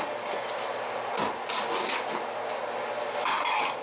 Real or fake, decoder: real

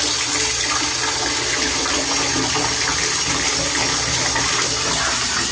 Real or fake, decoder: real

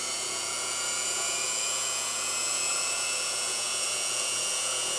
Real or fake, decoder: fake, vocoder, Vocos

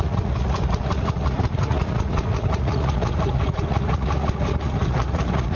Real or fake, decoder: fake, vocoder, Vocos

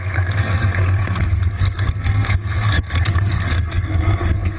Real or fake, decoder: fake, codec, SNAC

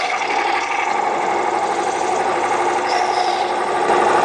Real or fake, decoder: real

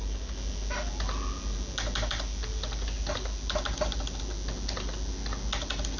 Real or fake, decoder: real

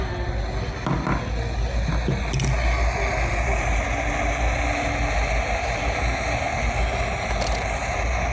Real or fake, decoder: real